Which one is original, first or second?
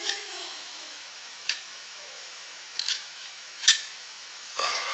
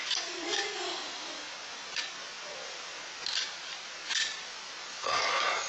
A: second